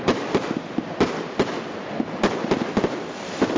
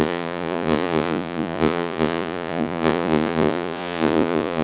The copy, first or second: second